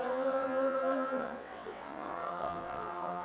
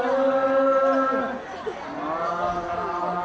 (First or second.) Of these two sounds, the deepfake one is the first